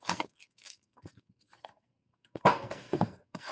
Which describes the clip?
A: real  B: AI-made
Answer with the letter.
B